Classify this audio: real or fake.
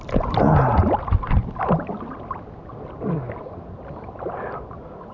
real